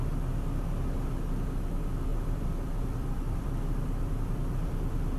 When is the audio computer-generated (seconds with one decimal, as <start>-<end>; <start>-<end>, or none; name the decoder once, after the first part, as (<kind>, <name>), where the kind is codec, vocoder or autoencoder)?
2.1-5.2 (vocoder, BigVGAN v2)